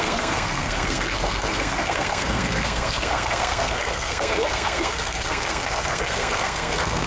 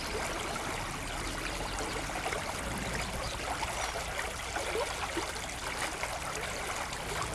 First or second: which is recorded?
second